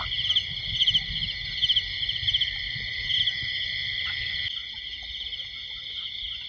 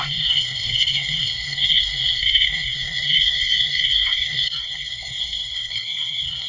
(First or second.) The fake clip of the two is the second